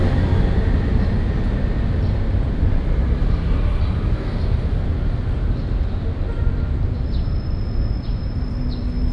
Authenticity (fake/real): real